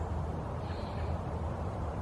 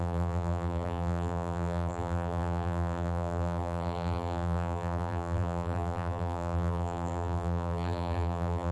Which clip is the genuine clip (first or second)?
first